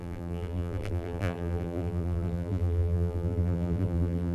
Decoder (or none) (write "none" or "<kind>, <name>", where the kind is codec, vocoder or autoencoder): vocoder, BigVGAN v2